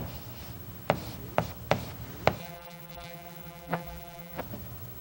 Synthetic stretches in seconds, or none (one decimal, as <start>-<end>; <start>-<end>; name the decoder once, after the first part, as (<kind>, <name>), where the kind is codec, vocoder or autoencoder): 2.4-4.4 (vocoder, BigVGAN v2)